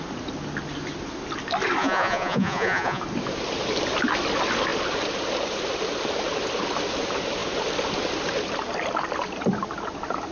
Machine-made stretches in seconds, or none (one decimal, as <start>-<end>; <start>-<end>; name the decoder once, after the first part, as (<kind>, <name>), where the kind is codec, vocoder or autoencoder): 1.8-3.0 (vocoder, Vocos)